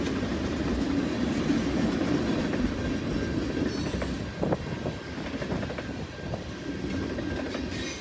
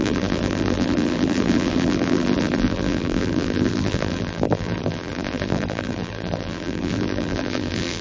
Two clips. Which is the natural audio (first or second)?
first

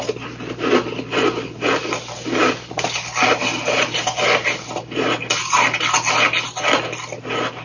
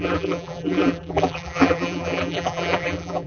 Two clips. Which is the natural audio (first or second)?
first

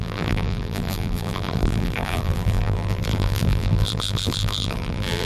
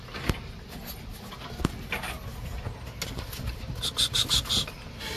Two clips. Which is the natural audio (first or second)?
second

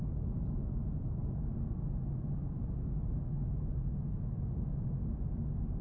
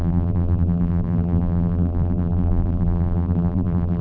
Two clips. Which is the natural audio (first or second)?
first